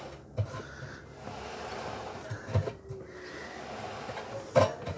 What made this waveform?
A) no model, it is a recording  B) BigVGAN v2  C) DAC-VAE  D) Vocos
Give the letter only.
A